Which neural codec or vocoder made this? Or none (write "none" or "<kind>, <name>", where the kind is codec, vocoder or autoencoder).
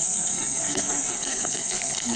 codec, SNAC